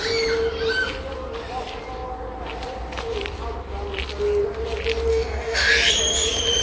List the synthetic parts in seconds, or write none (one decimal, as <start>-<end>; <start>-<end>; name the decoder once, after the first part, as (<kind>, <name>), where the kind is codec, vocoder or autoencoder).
5.1-5.7 (codec, DAC)